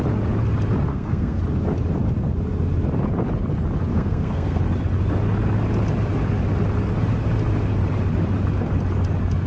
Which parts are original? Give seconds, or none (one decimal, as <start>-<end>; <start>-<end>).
0.0-0.9; 1.4-3.9; 4.6-9.5